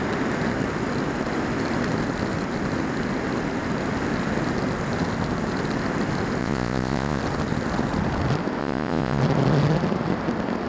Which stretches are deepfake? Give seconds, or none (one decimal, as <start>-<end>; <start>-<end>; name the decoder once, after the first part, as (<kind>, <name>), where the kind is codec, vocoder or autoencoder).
6.4-7.2 (vocoder, Vocos); 8.6-9.2